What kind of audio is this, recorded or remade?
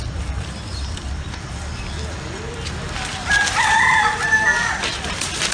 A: remade